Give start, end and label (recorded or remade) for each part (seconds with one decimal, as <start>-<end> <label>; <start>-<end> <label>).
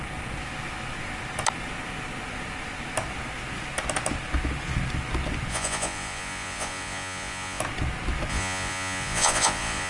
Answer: 0.0-5.5 recorded; 5.5-7.6 remade; 7.6-8.3 recorded; 8.3-9.9 remade